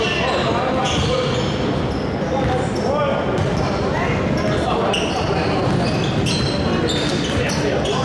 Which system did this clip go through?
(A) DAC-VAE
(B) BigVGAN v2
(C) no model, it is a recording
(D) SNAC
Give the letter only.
C